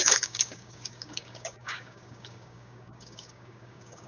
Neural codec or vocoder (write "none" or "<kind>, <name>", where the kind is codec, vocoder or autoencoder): codec, DAC